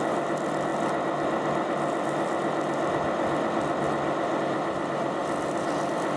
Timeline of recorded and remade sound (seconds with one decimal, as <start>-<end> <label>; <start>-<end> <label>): 0.0-0.7 remade; 0.7-4.4 recorded; 4.4-5.2 remade; 5.2-6.2 recorded